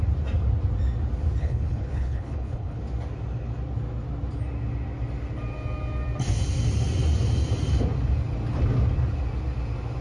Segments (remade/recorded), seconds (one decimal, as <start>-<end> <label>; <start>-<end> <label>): 0.0-1.4 recorded; 1.4-2.8 remade; 2.8-10.0 recorded